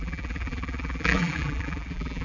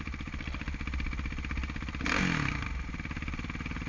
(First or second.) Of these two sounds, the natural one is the second